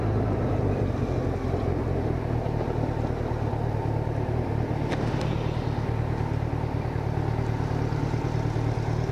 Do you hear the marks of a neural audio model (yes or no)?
no